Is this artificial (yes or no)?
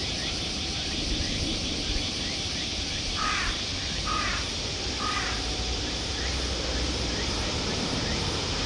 yes